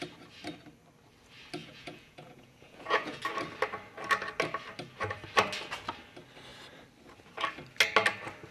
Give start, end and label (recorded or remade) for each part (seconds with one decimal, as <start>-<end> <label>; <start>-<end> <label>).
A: 0.0-1.6 recorded; 1.6-3.2 remade; 3.2-8.5 recorded